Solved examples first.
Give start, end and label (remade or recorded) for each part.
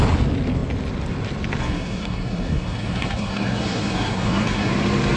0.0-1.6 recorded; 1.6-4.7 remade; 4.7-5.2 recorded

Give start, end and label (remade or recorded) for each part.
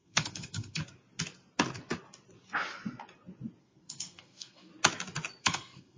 0.0-0.8 remade; 0.8-3.6 recorded; 3.6-4.7 remade; 4.7-5.4 recorded; 5.4-6.0 remade